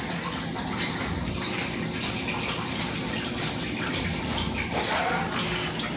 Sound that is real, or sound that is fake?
real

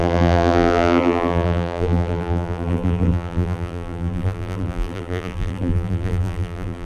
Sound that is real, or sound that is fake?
fake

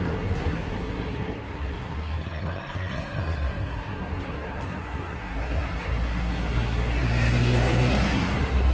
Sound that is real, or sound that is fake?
fake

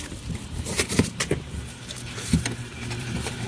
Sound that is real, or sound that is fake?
fake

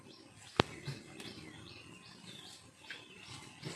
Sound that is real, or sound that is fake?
real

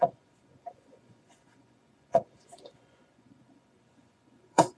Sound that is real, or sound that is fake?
fake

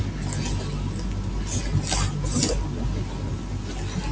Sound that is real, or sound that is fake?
real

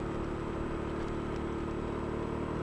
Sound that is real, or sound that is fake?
real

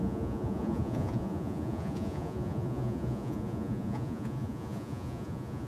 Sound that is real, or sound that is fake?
fake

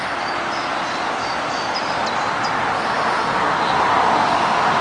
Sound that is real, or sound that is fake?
real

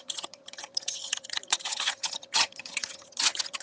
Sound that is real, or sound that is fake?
fake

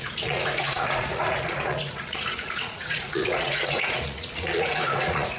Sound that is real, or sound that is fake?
fake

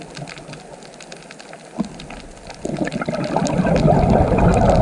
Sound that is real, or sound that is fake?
real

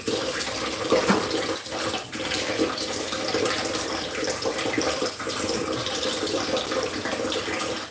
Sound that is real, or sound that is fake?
fake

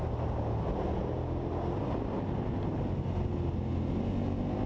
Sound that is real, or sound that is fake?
real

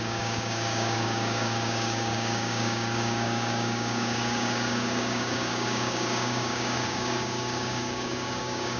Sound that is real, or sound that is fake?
fake